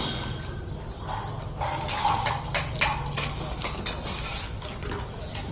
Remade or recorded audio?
recorded